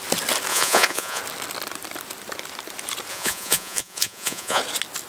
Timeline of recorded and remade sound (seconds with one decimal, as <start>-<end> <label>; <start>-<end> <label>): 0.0-0.5 recorded; 0.5-1.2 remade; 1.2-3.1 recorded; 3.1-4.6 remade; 4.6-5.1 recorded